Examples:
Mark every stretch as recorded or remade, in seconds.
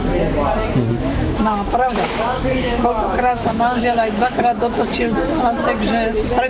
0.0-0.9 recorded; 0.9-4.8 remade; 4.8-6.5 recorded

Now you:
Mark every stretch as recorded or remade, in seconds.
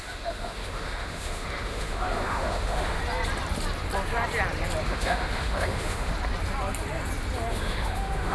0.0-3.0 remade; 3.0-4.8 recorded; 4.8-6.1 remade; 6.1-7.5 recorded; 7.5-8.3 remade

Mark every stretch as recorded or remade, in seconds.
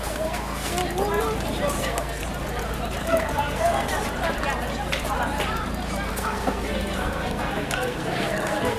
0.0-0.8 remade; 0.8-1.8 recorded; 1.8-2.2 remade; 2.2-3.0 recorded; 3.0-3.9 remade; 3.9-6.1 recorded; 6.1-8.8 remade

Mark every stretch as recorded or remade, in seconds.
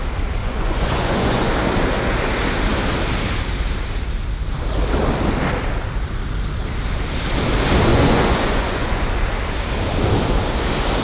0.0-0.4 recorded; 0.4-1.5 remade; 1.5-7.9 recorded; 7.9-9.0 remade; 9.0-11.0 recorded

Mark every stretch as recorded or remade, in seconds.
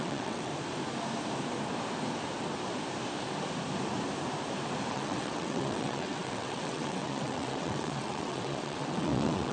0.0-0.5 remade; 0.5-4.9 recorded; 4.9-9.5 remade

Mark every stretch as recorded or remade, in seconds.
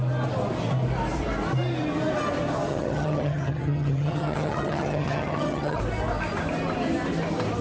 0.0-2.7 recorded; 2.7-5.8 remade; 5.8-7.6 recorded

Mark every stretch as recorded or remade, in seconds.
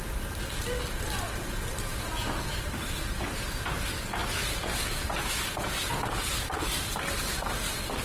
0.0-8.0 recorded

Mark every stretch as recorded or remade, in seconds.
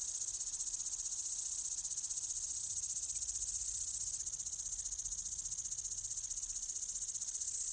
0.0-7.7 recorded